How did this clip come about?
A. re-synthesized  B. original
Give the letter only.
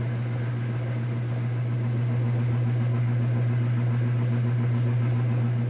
B